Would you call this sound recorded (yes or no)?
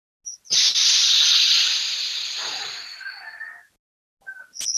yes